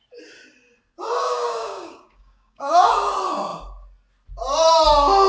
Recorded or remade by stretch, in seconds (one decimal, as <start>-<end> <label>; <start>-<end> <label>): 0.0-1.2 recorded; 1.2-2.9 remade; 2.9-5.3 recorded